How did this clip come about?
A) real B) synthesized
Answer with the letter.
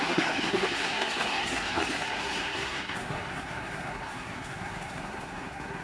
B